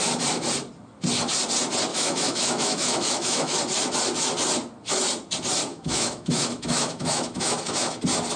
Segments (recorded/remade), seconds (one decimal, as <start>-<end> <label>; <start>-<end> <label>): 0.0-1.9 recorded; 1.9-3.6 remade; 3.6-5.7 recorded; 5.7-7.9 remade; 7.9-8.4 recorded